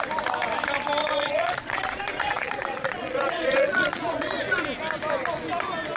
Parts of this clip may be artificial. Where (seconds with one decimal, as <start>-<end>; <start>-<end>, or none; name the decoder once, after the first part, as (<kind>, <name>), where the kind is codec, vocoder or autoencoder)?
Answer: 1.0-4.6 (vocoder, Vocos)